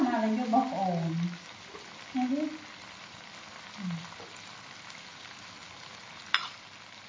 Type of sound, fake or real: real